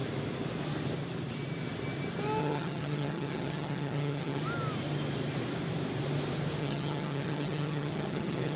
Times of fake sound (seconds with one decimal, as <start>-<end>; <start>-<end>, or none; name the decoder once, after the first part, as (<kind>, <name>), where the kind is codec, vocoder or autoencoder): 2.4-4.4 (vocoder, HiFi-GAN); 6.6-8.6